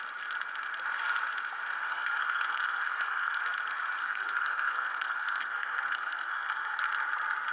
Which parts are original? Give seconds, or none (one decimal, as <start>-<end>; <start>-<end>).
0.0-1.9; 3.4-4.0; 6.8-7.5